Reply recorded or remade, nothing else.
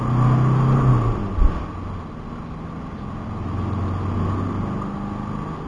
recorded